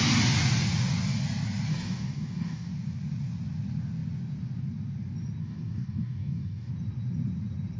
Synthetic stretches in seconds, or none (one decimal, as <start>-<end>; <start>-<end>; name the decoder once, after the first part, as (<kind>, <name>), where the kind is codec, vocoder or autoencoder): 1.7-2.7 (codec, DAC); 5.4-6.7